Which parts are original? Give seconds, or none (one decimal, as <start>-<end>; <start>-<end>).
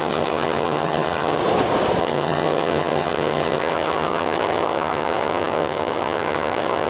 1.4-2.0